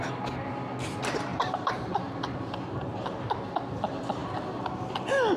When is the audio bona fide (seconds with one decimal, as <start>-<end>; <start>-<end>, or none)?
0.0-1.3; 2.1-5.4